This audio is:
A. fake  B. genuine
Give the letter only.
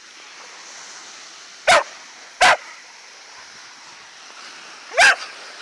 B